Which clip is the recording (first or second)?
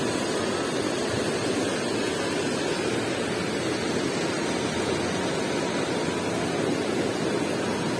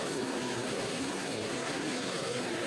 first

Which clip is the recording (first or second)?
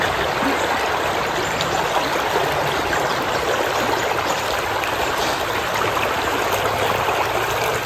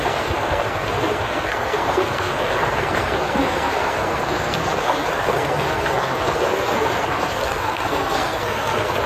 first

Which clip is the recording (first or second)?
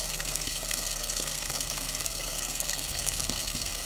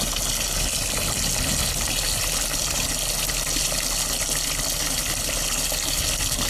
second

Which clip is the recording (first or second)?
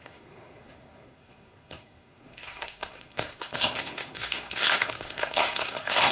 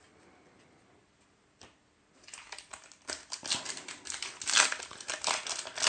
second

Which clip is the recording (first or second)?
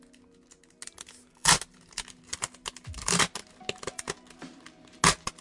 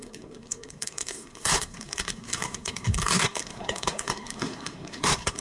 first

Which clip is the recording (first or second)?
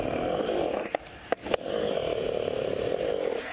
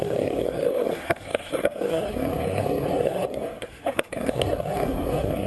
first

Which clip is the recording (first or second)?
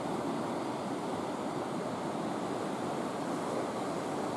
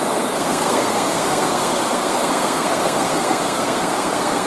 first